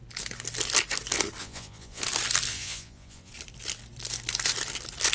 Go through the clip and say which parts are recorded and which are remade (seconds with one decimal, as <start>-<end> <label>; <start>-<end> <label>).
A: 0.0-1.4 recorded; 1.4-2.0 remade; 2.0-2.5 recorded; 2.5-3.3 remade; 3.3-5.1 recorded